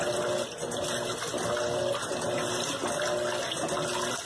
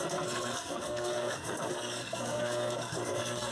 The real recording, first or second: first